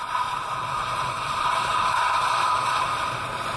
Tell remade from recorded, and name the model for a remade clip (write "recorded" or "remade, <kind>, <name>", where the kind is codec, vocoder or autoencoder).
recorded